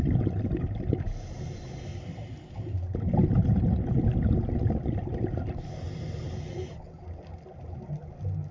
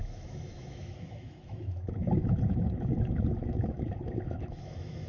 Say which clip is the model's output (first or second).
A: second